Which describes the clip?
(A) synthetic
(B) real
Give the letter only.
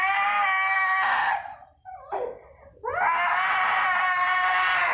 B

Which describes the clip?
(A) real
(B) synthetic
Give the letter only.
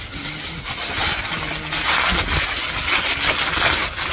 A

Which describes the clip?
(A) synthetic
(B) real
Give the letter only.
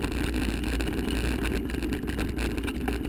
B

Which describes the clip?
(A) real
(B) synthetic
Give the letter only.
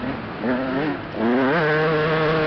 A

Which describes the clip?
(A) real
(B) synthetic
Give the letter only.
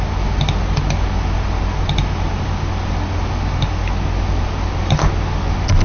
A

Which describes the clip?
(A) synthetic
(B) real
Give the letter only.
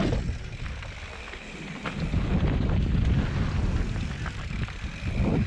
B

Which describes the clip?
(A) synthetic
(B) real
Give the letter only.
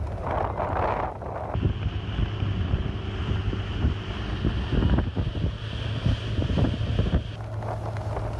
B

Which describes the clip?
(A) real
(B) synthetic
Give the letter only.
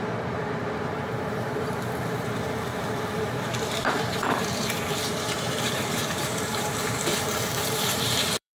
B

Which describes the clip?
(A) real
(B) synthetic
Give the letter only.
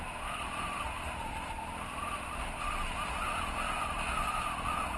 A